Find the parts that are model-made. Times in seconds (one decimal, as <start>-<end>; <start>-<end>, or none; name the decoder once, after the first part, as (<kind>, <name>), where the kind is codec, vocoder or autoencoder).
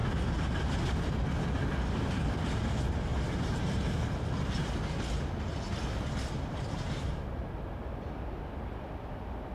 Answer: none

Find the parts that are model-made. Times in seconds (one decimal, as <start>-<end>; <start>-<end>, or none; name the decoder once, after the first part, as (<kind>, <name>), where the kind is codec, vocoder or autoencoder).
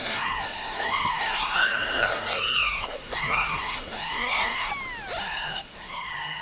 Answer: 0.0-4.7 (codec, SNAC); 5.2-6.4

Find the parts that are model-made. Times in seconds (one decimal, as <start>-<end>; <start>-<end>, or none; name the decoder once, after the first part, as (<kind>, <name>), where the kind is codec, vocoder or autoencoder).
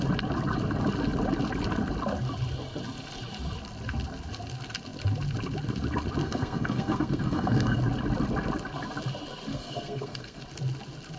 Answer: 6.2-7.8 (codec, SNAC); 9.5-10.4